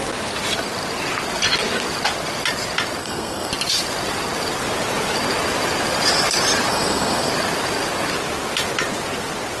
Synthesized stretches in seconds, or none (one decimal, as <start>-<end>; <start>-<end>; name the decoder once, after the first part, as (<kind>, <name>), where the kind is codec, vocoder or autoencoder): 3.0-3.5 (codec, SNAC); 6.7-7.3